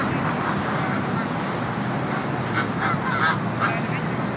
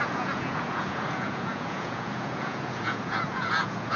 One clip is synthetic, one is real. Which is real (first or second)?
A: first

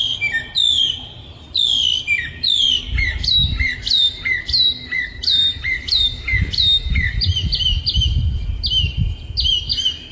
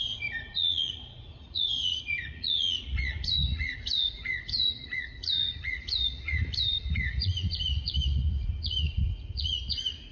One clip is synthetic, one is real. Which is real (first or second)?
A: first